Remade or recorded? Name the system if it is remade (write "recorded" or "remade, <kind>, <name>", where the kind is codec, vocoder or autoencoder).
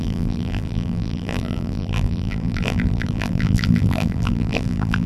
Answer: remade, vocoder, BigVGAN v2